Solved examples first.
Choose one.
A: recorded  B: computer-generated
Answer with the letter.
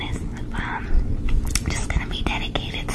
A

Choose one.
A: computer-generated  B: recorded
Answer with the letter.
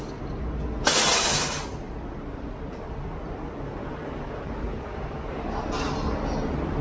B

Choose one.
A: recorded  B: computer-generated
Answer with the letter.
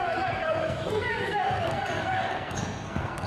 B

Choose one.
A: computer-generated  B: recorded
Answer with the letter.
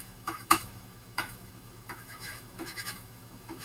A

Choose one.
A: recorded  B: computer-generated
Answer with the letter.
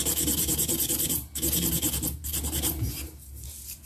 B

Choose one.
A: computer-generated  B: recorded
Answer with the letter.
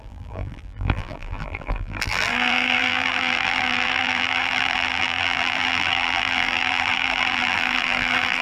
A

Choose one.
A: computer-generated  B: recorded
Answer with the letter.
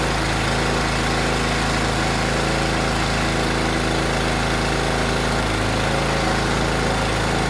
B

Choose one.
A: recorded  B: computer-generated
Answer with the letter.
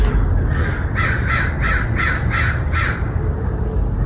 A